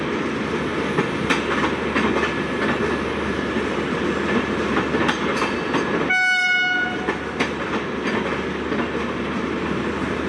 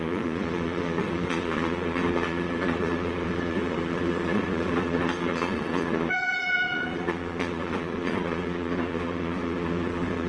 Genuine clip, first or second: first